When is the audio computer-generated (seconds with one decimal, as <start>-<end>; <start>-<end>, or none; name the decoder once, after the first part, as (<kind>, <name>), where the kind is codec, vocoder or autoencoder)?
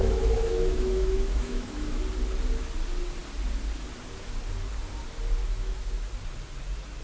0.0-2.0 (autoencoder, DAC-VAE); 5.4-5.9